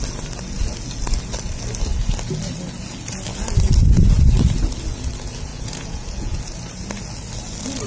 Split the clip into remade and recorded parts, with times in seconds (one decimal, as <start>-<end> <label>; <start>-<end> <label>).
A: 0.0-5.5 recorded; 5.5-6.4 remade; 6.4-7.9 recorded